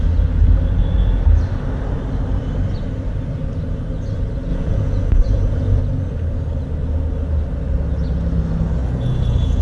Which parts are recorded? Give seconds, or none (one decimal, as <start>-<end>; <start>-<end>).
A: 0.0-4.5; 5.8-8.8

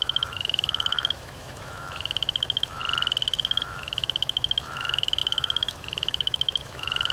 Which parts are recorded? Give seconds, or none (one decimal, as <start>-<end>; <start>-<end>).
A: 2.8-3.4

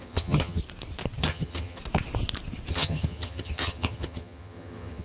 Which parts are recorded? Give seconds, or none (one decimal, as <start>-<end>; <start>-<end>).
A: 0.6-1.2; 1.8-2.7